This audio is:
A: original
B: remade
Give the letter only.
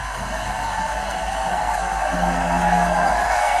B